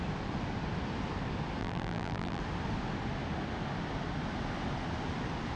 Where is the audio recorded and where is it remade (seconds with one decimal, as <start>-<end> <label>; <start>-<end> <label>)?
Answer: 0.0-1.6 recorded; 1.6-2.4 remade; 2.4-5.6 recorded